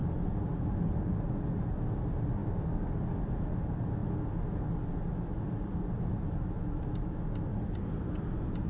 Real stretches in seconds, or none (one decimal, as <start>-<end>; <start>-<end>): 0.0-2.4; 2.9-8.7